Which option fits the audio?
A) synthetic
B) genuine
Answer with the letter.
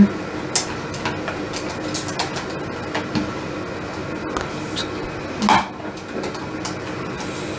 B